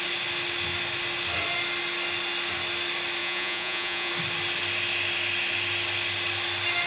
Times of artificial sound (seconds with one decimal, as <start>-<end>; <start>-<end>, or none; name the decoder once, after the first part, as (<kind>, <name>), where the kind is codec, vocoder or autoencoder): 3.2-4.1 (vocoder, Vocos)